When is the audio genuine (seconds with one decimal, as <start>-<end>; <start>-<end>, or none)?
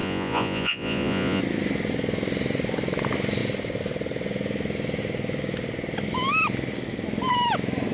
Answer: 1.4-7.9